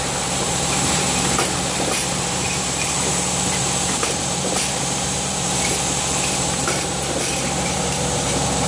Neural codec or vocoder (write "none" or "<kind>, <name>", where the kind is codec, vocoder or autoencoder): vocoder, BigVGAN v2